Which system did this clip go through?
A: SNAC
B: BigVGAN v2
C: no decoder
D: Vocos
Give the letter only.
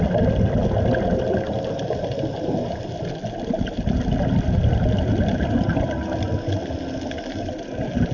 C